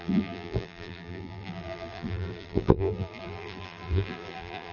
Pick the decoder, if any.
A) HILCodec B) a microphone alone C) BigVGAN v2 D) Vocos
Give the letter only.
C